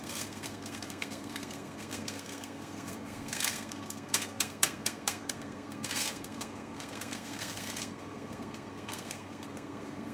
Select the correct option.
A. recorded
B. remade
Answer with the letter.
B